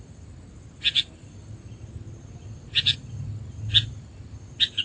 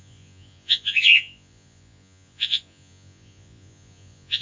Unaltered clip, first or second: first